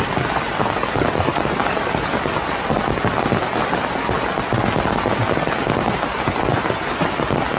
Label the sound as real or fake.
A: real